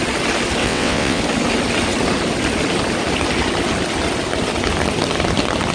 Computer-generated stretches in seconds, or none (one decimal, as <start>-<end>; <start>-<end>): 0.6-1.2